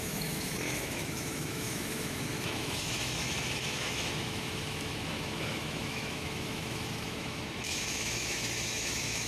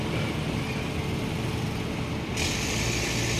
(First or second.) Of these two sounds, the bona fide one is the second